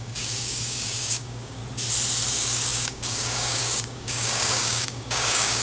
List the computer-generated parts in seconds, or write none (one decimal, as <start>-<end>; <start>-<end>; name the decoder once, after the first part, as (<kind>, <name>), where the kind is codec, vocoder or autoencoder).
0.0-1.6 (codec, DAC); 2.3-5.6

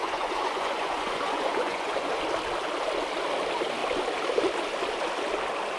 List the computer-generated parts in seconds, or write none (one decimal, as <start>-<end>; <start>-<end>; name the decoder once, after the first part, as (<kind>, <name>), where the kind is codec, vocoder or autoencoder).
0.0-2.2 (vocoder, Vocos)

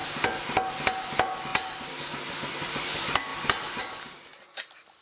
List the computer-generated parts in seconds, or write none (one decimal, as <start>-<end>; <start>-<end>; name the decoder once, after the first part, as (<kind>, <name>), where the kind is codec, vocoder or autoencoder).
0.7-1.5 (vocoder, BigVGAN v2); 2.2-5.0